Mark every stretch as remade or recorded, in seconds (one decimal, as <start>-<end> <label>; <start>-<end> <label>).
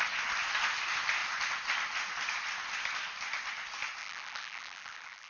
0.0-4.0 recorded; 4.0-5.3 remade